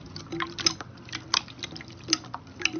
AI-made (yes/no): no